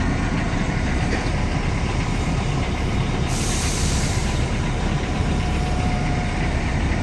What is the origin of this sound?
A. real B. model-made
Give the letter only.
B